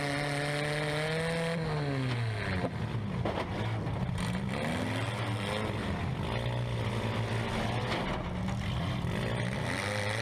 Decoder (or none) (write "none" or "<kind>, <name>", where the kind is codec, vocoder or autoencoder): none